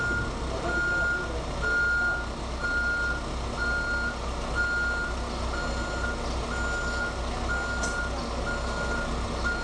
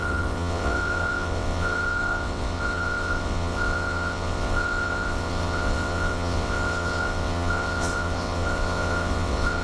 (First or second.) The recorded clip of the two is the first